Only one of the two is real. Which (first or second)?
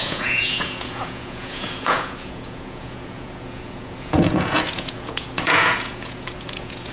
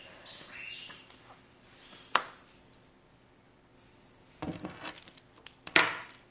second